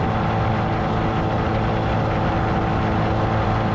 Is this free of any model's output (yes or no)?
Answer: yes